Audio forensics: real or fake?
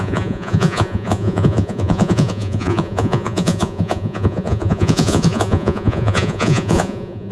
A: fake